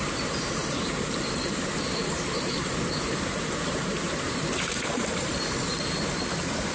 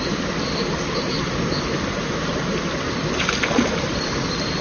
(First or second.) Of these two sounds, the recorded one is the second